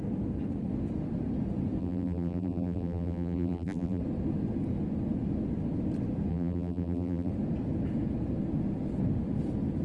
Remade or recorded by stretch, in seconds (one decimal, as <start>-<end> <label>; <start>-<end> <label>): 0.0-1.8 recorded; 1.8-4.0 remade; 4.0-6.3 recorded; 6.3-7.3 remade; 7.3-9.8 recorded